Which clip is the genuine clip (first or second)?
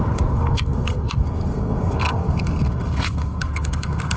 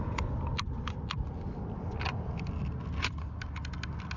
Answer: second